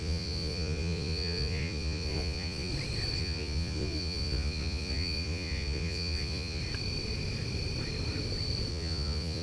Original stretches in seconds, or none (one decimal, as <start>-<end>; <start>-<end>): 2.7-3.2; 6.6-8.7